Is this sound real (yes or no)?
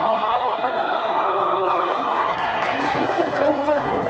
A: no